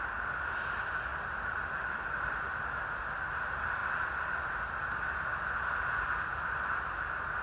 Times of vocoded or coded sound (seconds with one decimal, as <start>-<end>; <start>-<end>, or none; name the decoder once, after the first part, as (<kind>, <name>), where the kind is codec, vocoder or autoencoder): none